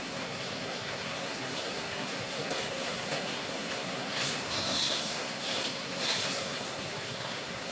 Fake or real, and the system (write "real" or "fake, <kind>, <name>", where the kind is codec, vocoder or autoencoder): fake, codec, SNAC